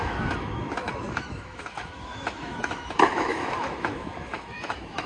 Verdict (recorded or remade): remade